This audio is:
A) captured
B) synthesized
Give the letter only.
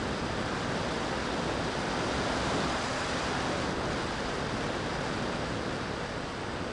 A